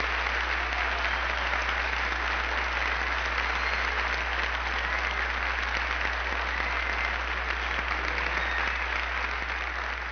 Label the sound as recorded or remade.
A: recorded